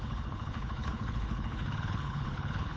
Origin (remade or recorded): remade